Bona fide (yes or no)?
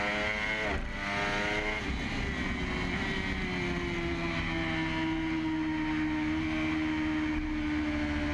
yes